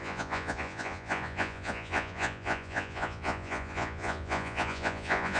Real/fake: fake